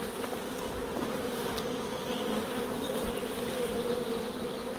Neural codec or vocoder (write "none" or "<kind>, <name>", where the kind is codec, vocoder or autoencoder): none